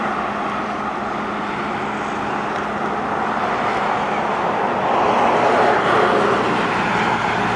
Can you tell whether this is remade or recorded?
recorded